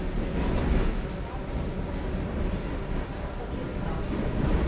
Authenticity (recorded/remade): recorded